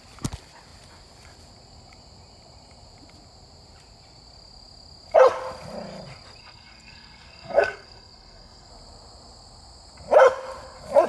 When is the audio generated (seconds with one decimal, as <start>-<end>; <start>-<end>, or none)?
6.4-8.7